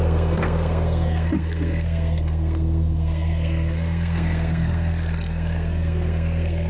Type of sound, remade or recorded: remade